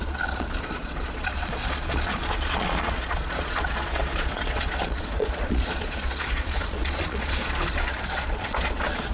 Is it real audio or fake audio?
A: fake